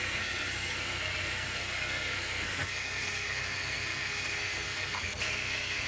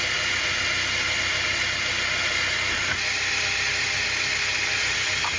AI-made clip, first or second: first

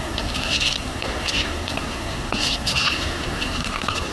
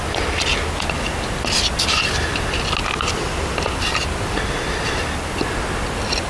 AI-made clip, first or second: first